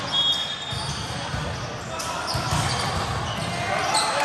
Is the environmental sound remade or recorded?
recorded